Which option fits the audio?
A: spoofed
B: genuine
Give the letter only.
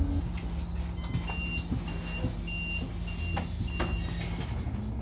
B